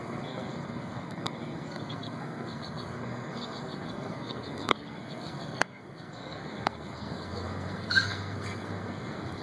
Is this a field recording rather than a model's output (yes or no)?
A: no